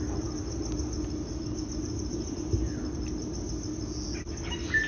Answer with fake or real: real